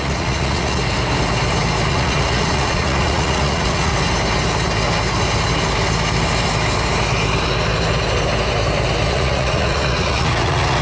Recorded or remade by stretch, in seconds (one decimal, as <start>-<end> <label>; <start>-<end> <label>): 0.0-0.8 remade; 0.8-1.9 recorded; 1.9-3.9 remade; 3.9-9.1 recorded; 9.1-10.8 remade